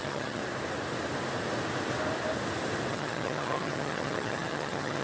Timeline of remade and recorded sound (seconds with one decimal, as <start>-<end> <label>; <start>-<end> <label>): 0.0-0.4 remade; 0.4-2.9 recorded; 2.9-5.0 remade